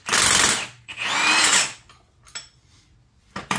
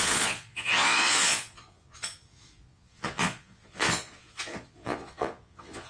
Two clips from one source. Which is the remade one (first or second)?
second